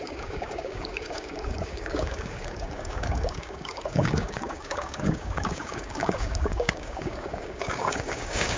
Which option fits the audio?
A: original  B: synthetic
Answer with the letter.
B